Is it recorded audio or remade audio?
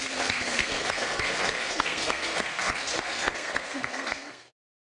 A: remade